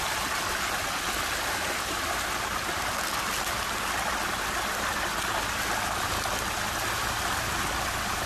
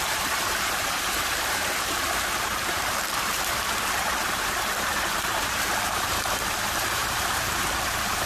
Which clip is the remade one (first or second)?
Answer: second